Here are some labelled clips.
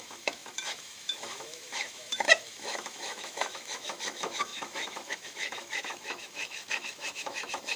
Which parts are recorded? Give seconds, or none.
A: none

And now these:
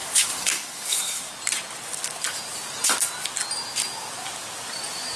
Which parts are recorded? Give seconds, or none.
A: 1.3-5.2

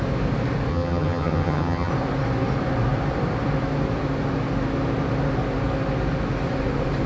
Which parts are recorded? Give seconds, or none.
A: 0.0-0.7; 1.9-7.1

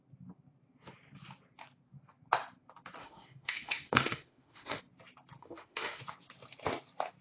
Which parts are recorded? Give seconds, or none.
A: 0.0-3.0; 4.8-5.4; 6.0-7.2